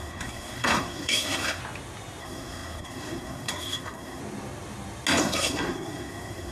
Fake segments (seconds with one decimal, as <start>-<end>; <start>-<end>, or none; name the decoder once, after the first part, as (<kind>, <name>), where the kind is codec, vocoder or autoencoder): 0.0-1.6 (codec, SNAC); 2.2-4.2; 5.2-6.5

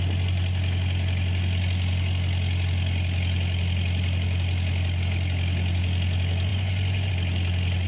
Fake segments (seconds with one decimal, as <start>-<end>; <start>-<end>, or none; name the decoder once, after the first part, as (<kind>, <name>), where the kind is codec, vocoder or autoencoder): 6.5-7.1 (vocoder, Vocos)

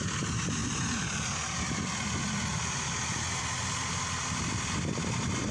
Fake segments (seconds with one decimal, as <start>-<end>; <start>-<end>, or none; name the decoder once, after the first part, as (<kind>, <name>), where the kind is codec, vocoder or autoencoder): none

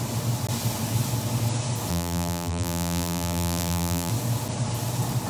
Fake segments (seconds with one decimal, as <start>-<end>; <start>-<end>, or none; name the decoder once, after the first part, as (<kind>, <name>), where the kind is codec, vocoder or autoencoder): 1.9-4.1 (vocoder, BigVGAN v2)

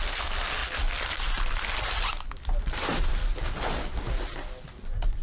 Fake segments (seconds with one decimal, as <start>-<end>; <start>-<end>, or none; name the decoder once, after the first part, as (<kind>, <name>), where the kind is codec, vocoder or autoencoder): none

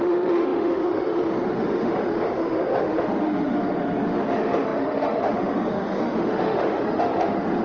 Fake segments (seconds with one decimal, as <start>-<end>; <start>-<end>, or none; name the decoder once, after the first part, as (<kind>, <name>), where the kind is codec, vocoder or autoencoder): 0.0-7.6 (autoencoder, DAC-VAE)

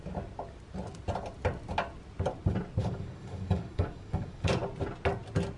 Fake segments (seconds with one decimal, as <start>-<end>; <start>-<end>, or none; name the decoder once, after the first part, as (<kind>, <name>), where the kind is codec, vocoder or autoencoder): 2.8-4.5 (codec, DAC)